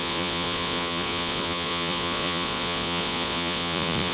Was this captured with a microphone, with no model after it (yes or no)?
no